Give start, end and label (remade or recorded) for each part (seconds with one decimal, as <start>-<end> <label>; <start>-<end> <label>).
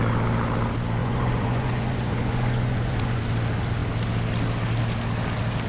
0.0-1.0 recorded; 1.0-3.2 remade; 3.2-5.7 recorded